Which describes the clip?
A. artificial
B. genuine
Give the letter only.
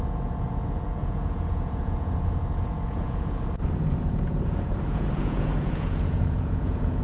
A